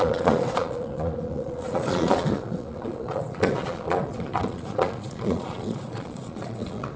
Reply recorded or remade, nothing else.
remade